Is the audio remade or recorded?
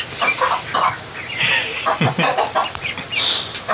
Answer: recorded